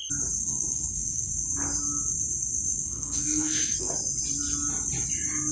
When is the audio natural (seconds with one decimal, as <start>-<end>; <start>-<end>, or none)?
0.0-0.4; 1.3-2.7; 3.9-5.5